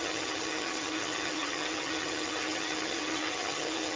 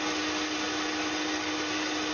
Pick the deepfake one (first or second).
first